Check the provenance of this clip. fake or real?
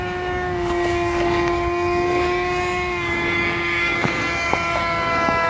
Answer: fake